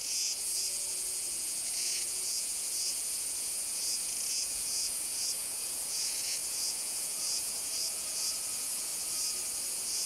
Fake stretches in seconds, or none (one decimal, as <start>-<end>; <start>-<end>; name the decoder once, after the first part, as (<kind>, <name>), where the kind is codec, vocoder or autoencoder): 0.0-8.9 (vocoder, Vocos); 9.7-10.1